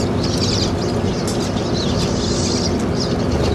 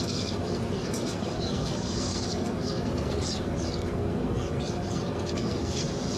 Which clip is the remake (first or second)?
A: second